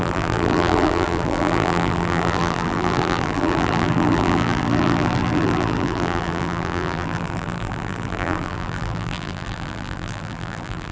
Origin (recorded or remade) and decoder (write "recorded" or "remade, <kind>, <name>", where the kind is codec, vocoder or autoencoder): remade, vocoder, BigVGAN v2